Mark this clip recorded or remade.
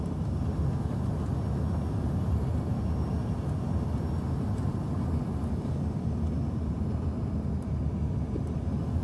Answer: recorded